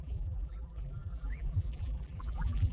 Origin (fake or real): fake